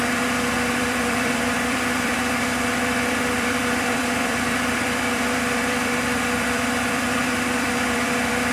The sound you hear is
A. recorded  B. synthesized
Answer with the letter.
B